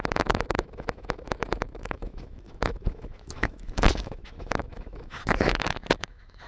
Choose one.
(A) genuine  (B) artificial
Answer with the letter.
B